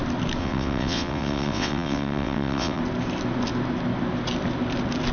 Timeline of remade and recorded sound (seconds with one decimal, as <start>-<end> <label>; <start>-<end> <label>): 0.0-0.4 recorded; 0.4-2.8 remade; 2.8-5.1 recorded

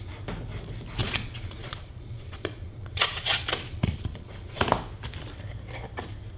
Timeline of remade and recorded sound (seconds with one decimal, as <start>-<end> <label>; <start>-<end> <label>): 0.0-1.0 recorded; 1.0-4.6 remade; 4.6-6.4 recorded

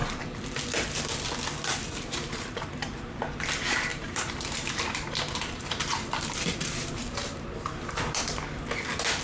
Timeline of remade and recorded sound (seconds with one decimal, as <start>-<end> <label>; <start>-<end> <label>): 0.0-0.6 remade; 0.6-1.7 recorded; 1.7-3.2 remade; 3.2-3.9 recorded; 3.9-8.2 remade; 8.2-9.2 recorded

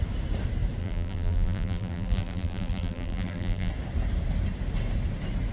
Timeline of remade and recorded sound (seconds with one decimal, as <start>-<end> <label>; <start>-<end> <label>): 0.0-0.8 recorded; 0.8-3.7 remade; 3.7-5.5 recorded